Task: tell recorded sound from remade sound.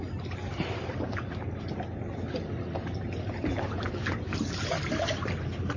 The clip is recorded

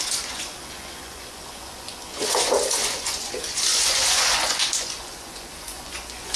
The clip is remade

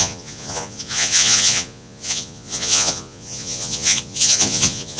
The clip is remade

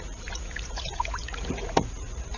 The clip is remade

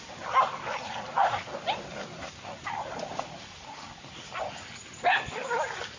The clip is recorded